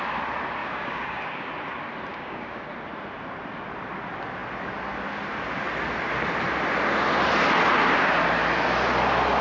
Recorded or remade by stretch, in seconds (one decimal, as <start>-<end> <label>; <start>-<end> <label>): 0.0-0.6 recorded; 0.6-1.5 remade; 1.5-2.1 recorded; 2.1-2.7 remade; 2.7-9.4 recorded